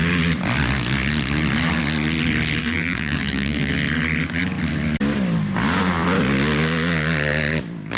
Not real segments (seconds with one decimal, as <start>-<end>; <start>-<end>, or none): 2.6-3.7